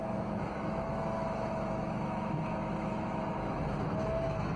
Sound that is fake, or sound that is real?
fake